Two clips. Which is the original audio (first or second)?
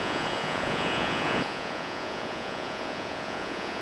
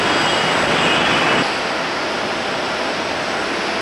second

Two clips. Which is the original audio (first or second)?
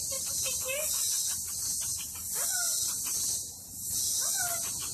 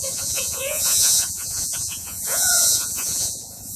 first